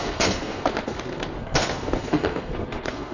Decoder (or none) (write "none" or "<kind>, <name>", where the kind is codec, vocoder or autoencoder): codec, SNAC